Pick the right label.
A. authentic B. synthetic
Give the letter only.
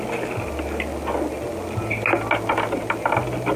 A